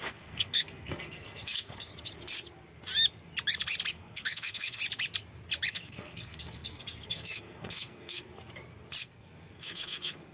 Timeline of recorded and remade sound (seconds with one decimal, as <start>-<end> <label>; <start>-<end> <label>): 0.0-1.9 remade; 1.9-3.9 recorded; 3.9-4.8 remade; 4.8-5.7 recorded; 5.7-8.3 remade; 8.3-9.0 recorded; 9.0-10.3 remade